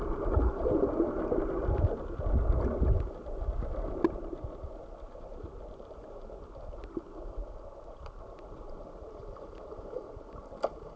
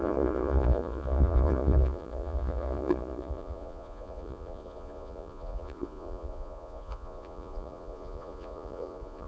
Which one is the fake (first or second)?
second